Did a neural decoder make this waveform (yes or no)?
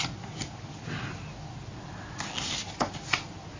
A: no